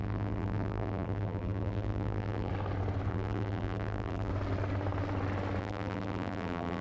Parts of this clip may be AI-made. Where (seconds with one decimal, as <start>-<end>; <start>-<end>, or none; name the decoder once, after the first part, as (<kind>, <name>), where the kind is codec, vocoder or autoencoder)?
0.0-2.5 (vocoder, BigVGAN v2); 3.1-4.3; 5.6-6.8